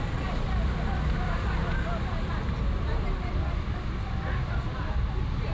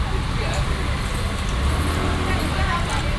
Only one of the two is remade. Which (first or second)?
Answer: first